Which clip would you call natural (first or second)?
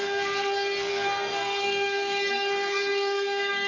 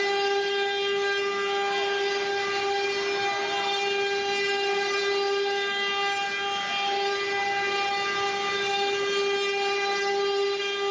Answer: second